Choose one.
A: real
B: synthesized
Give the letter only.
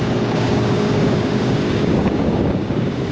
B